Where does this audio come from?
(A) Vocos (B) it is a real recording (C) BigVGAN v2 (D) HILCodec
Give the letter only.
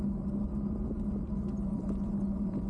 B